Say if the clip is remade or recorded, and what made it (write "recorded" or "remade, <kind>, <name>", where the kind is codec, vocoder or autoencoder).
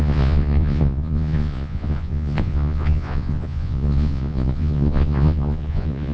remade, vocoder, Vocos